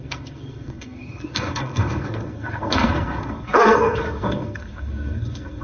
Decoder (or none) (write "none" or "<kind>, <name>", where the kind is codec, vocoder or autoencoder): codec, SNAC